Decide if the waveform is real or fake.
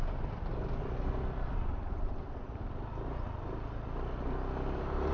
real